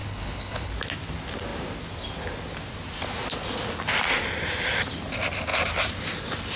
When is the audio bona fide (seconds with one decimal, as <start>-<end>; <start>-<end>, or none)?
0.7-6.6